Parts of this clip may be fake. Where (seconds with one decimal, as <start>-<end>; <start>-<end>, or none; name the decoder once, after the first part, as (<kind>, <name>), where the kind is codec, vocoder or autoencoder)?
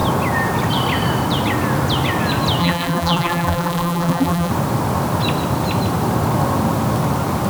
2.6-4.5 (vocoder, BigVGAN v2)